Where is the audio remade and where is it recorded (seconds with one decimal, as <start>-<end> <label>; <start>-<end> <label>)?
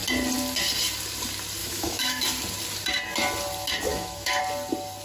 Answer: 0.0-1.6 recorded; 1.6-2.2 remade; 2.2-3.9 recorded; 3.9-4.4 remade; 4.4-5.0 recorded